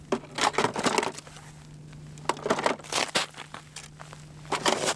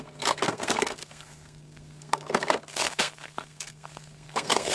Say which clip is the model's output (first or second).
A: second